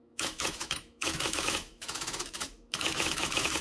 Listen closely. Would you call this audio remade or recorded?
remade